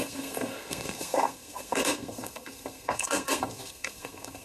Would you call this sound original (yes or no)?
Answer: no